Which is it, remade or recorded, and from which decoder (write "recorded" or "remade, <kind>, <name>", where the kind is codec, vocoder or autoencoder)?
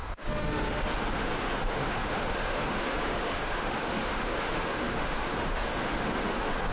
remade, autoencoder, DAC-VAE